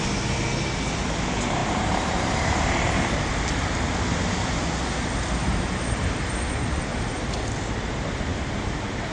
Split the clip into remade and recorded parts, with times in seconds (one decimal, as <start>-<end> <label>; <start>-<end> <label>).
0.0-1.6 recorded; 1.6-3.4 remade; 3.4-5.4 recorded; 5.4-6.9 remade; 6.9-9.1 recorded